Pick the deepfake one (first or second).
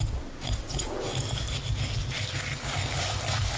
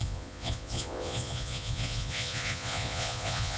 second